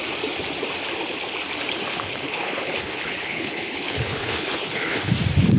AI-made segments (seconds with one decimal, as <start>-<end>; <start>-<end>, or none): 1.9-5.1